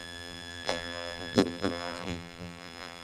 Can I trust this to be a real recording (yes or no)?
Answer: no